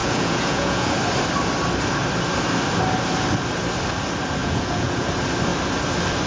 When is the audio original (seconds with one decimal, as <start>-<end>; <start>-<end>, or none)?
0.9-4.4; 5.1-6.3

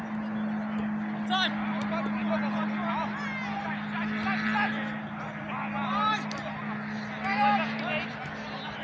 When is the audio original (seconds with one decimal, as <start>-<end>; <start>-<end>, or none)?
0.0-8.8

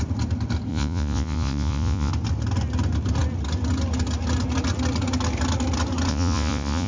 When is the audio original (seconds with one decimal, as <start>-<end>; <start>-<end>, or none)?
0.0-0.7; 2.1-6.1

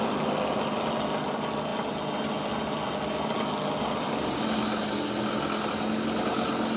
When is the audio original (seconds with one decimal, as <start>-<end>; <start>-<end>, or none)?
0.0-6.8

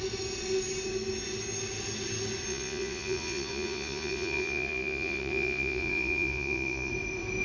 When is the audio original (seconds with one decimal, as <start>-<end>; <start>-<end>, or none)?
0.0-2.5; 6.9-7.4

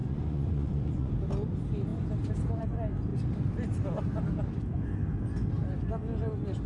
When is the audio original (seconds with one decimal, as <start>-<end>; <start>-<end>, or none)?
1.1-6.7

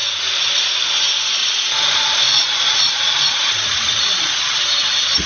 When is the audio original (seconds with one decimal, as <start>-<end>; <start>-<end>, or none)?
0.0-1.4; 4.6-5.3